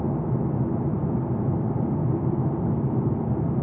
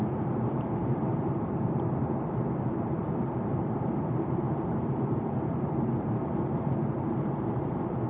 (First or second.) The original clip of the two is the first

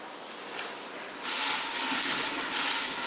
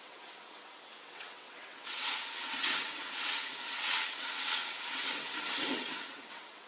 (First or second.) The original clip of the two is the first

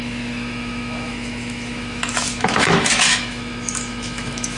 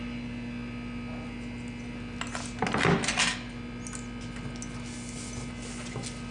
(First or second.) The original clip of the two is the second